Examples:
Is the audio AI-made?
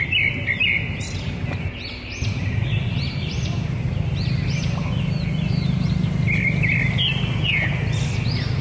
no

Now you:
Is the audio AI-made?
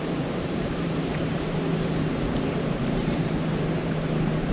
yes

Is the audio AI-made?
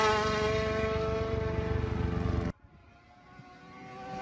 no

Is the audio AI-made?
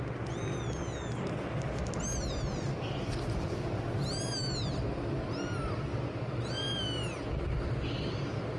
no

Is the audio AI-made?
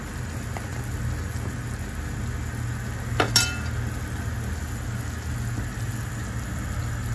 no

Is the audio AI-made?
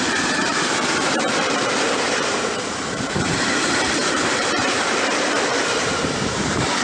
yes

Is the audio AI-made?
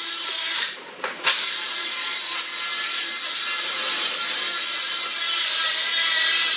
yes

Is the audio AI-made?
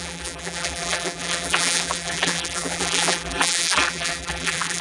yes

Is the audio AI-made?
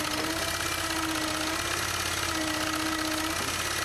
no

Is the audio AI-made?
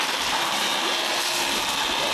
yes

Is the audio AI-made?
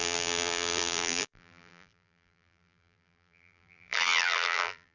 yes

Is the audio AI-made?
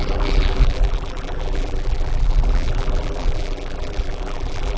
yes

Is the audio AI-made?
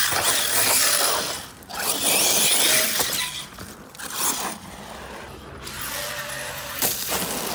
no